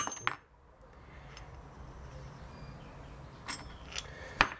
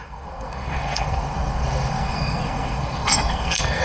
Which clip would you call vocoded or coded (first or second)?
second